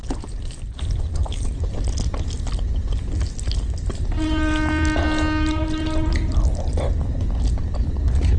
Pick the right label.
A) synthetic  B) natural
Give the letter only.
B